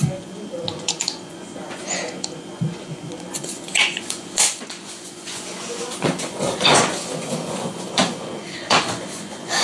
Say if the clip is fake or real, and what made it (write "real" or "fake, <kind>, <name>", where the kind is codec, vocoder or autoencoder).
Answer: fake, vocoder, Vocos